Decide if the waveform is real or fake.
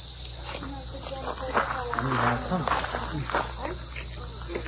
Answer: real